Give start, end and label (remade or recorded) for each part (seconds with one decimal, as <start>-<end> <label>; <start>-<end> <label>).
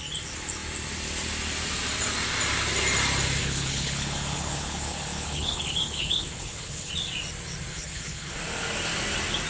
0.0-3.4 recorded; 3.4-6.9 remade; 6.9-7.7 recorded; 7.7-8.3 remade; 8.3-9.5 recorded